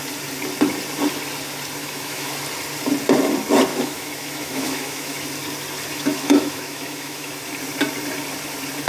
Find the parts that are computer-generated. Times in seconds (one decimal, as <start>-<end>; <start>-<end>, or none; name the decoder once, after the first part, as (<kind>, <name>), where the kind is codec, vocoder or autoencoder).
1.8-2.3 (autoencoder, DAC-VAE); 3.7-5.2; 5.9-7.3